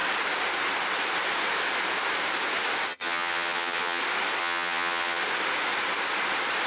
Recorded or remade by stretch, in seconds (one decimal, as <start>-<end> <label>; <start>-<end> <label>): 0.0-2.9 recorded; 2.9-4.0 remade; 4.0-4.4 recorded; 4.4-5.2 remade; 5.2-6.7 recorded